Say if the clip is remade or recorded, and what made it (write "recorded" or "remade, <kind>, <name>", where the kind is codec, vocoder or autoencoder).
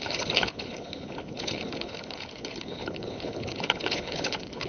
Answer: remade, codec, HILCodec